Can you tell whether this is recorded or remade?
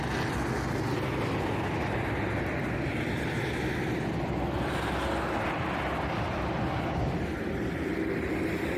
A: recorded